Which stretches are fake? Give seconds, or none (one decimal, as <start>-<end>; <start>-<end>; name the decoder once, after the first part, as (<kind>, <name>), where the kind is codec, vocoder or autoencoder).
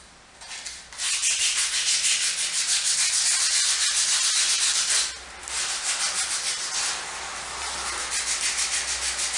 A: none